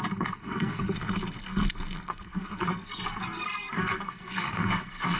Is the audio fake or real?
fake